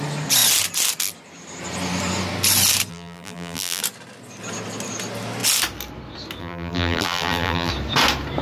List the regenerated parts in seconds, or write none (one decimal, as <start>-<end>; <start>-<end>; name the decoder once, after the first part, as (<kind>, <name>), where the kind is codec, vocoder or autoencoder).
2.9-3.8 (vocoder, BigVGAN v2); 6.4-7.7

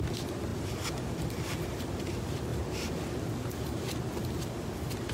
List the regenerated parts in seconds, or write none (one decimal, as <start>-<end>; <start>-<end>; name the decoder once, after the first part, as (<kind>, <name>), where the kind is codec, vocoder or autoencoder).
none

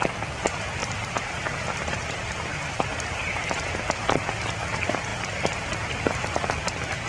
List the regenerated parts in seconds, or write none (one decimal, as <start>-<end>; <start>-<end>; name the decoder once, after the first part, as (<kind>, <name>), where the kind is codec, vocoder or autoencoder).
0.8-1.6 (vocoder, BigVGAN v2); 2.5-3.7

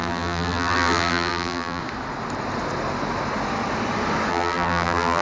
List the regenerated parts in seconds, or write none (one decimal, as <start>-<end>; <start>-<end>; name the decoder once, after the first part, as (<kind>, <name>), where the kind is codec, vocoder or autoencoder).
0.0-1.8 (vocoder, BigVGAN v2); 4.3-5.2